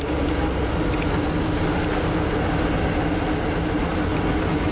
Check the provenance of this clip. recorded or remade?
recorded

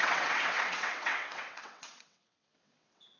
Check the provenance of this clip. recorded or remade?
remade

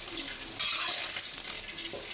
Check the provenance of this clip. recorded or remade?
recorded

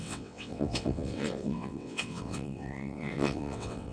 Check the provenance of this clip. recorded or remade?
remade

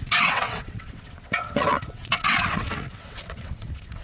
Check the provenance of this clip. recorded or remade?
remade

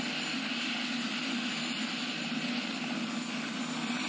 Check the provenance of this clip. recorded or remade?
recorded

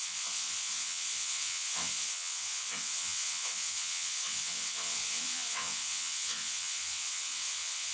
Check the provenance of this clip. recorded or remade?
remade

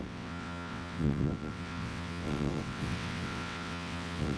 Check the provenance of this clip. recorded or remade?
remade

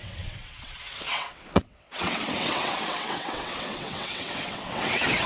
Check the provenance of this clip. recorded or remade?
remade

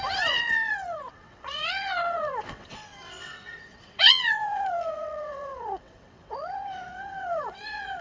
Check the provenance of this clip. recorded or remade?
remade